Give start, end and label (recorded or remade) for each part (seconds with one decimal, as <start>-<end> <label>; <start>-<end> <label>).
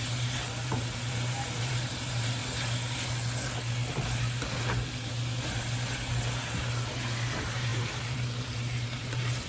0.0-2.4 remade; 2.4-6.4 recorded; 6.4-9.5 remade